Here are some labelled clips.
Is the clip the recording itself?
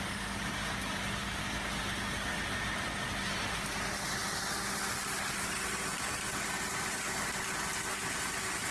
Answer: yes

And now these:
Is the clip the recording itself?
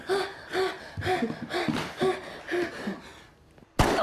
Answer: yes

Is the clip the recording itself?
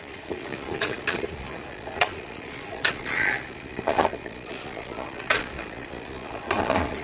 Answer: no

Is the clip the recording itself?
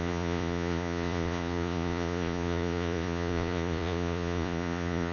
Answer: no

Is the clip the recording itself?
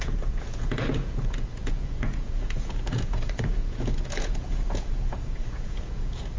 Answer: no